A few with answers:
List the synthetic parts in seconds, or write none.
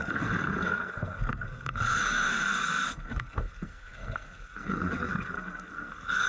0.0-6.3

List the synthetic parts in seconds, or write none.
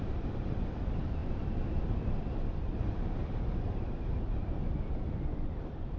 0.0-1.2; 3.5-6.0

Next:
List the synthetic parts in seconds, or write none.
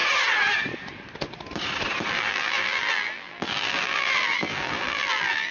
2.1-5.5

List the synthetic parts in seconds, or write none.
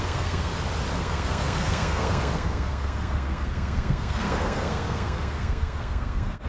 0.0-0.5; 1.0-6.5